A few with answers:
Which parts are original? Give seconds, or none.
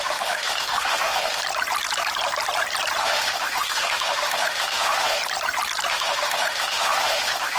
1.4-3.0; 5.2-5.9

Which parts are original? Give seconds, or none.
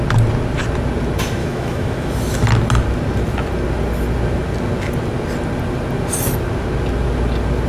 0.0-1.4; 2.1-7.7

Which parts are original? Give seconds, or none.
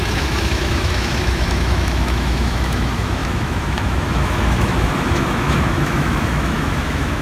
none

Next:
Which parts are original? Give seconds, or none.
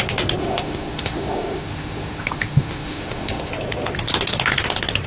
0.0-0.4; 3.5-5.1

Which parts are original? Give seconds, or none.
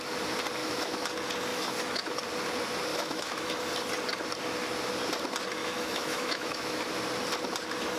0.0-0.6; 1.1-1.5; 2.2-2.9; 3.6-5.6; 6.8-8.0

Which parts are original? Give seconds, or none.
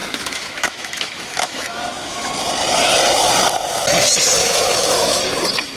2.3-4.4; 5.2-5.8